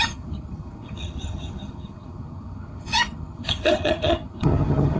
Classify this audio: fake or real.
fake